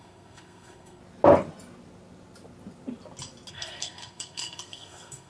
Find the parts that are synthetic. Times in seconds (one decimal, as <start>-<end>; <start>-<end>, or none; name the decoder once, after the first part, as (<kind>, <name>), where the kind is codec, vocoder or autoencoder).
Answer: 0.0-1.0 (codec, SNAC); 3.5-5.3